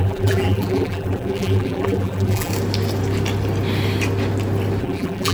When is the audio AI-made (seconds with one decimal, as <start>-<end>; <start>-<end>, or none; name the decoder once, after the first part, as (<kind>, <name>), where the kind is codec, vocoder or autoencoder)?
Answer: 0.0-2.5 (vocoder, BigVGAN v2); 4.8-5.3